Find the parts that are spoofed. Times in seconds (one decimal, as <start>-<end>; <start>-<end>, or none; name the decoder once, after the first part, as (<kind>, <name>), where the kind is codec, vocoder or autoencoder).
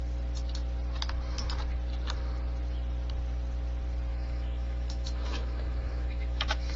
4.1-6.8 (autoencoder, DAC-VAE)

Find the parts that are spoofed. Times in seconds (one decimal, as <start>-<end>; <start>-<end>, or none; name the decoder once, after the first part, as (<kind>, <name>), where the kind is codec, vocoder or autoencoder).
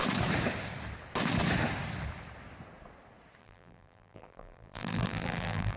3.4-5.8 (vocoder, BigVGAN v2)